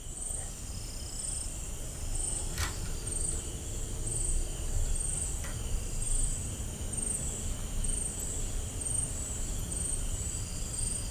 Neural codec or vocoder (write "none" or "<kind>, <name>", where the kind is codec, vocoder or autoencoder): vocoder, BigVGAN v2